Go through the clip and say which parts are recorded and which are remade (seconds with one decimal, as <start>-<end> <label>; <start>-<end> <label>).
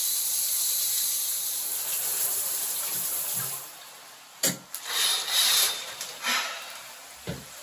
0.0-2.1 recorded; 2.1-3.0 remade; 3.0-5.1 recorded; 5.1-6.8 remade; 6.8-7.6 recorded